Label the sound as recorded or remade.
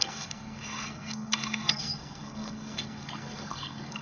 remade